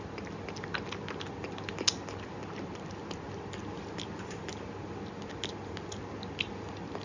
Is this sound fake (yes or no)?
no